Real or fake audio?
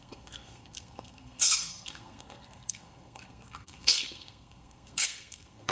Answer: fake